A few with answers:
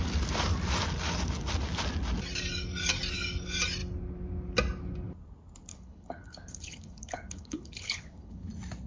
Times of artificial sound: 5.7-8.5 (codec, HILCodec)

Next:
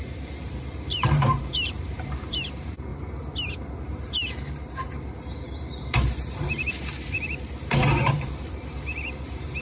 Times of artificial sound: 0.0-2.9 (vocoder, BigVGAN v2); 3.8-9.6